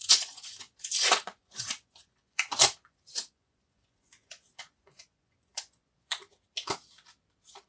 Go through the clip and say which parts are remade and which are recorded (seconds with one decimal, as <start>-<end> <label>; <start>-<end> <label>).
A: 0.0-6.2 remade; 6.2-7.7 recorded